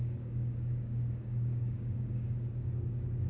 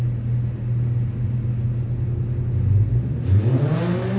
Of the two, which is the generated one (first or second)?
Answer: first